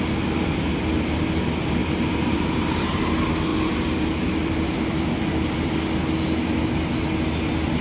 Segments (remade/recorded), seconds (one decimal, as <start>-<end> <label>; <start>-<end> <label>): 0.0-1.8 recorded; 1.8-3.0 remade; 3.0-3.5 recorded; 3.5-5.7 remade; 5.7-7.8 recorded